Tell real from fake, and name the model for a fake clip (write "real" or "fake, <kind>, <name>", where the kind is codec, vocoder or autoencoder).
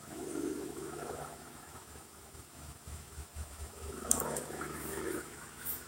fake, autoencoder, DAC-VAE